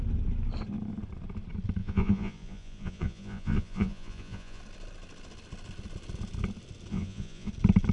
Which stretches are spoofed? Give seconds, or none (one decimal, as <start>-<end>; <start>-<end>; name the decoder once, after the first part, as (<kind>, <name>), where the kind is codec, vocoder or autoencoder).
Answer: 1.8-4.6 (vocoder, Vocos); 6.9-7.5